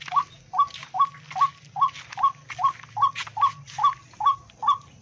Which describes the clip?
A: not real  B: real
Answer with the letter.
B